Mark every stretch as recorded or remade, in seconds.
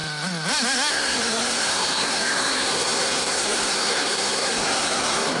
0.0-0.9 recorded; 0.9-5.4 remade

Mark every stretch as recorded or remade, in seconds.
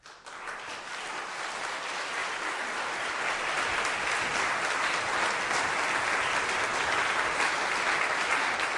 0.0-8.8 recorded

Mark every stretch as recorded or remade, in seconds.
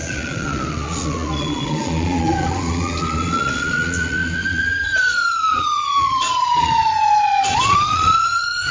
0.0-8.7 remade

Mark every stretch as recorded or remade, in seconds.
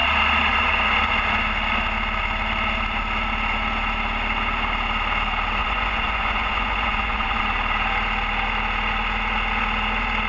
0.0-5.6 recorded; 5.6-7.4 remade; 7.4-10.3 recorded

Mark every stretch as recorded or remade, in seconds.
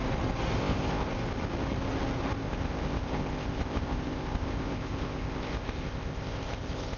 0.0-0.6 recorded; 0.6-1.1 remade; 1.1-2.4 recorded; 2.4-7.0 remade